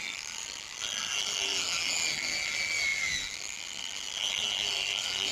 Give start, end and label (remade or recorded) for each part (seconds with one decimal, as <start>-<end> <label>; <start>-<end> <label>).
0.0-5.3 recorded